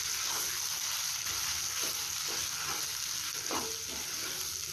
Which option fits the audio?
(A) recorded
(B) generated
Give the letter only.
A